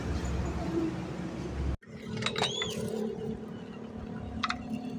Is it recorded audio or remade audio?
recorded